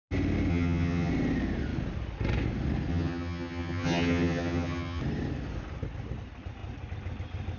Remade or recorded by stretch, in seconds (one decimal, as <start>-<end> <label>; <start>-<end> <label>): 0.0-0.5 recorded; 0.5-1.1 remade; 1.1-2.9 recorded; 2.9-5.0 remade; 5.0-7.6 recorded